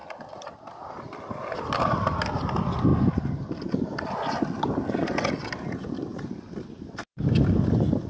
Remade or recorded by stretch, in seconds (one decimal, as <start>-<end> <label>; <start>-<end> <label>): 0.0-8.1 recorded